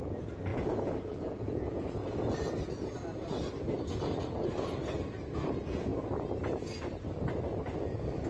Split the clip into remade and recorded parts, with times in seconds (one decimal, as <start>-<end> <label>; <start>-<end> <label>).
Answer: 0.0-0.5 recorded; 0.5-2.3 remade; 2.3-8.3 recorded